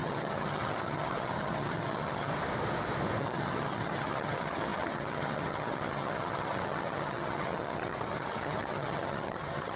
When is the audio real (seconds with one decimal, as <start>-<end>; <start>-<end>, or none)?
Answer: 2.3-3.2

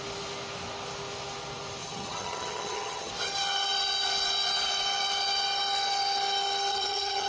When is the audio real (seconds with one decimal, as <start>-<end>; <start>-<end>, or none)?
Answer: 0.0-1.8; 3.1-6.7